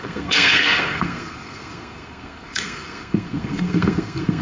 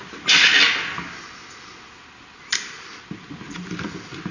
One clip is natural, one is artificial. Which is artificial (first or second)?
first